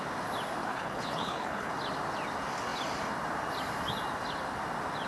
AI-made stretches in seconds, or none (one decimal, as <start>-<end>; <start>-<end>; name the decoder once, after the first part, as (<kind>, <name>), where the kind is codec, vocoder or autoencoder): 0.6-1.7 (codec, HILCodec)